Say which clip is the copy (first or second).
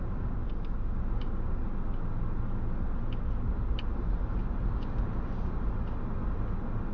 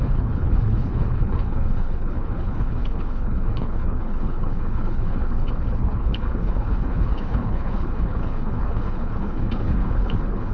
second